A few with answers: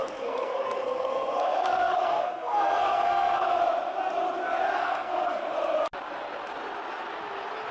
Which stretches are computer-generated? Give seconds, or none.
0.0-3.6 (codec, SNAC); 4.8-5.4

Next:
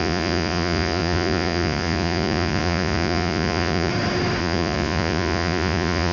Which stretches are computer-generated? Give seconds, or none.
0.0-3.9 (vocoder, Vocos); 4.4-6.1

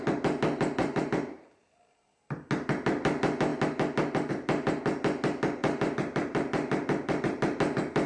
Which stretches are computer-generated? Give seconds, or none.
0.8-1.8 (vocoder, BigVGAN v2); 5.6-7.2